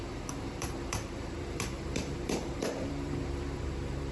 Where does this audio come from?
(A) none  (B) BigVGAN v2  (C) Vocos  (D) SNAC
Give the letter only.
B